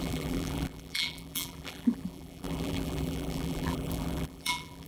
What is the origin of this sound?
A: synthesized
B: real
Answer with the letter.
A